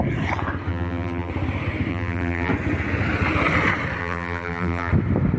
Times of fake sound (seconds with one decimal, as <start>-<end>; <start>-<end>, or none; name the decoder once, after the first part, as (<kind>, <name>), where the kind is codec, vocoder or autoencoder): 0.7-1.3 (vocoder, BigVGAN v2); 1.9-2.5; 4.0-4.9

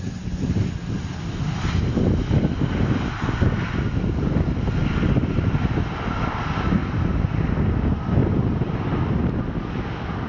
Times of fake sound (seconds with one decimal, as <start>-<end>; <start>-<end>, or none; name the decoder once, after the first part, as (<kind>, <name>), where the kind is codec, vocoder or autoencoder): none

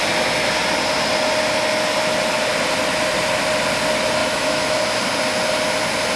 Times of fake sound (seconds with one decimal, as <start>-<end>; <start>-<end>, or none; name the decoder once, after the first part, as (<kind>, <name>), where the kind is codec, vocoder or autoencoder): 4.2-4.8 (autoencoder, DAC-VAE)

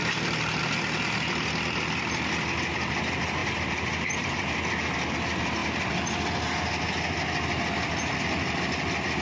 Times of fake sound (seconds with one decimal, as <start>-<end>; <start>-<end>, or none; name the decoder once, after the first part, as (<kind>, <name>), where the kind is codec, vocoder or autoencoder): 0.0-0.6 (vocoder, BigVGAN v2); 3.4-5.1; 5.6-6.2

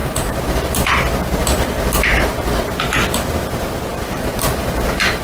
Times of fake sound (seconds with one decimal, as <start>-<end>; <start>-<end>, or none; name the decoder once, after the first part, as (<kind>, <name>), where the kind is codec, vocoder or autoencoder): 0.0-0.7 (vocoder, BigVGAN v2); 1.4-2.5; 3.9-5.2